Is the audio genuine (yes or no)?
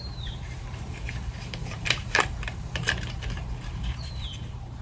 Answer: no